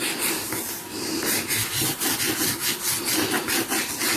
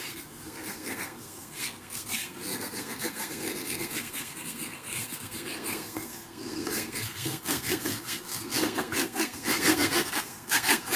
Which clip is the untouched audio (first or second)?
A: first